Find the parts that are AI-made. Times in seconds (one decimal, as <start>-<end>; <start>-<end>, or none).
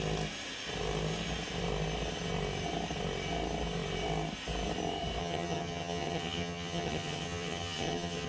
5.2-8.3